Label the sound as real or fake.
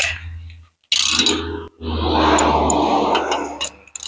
real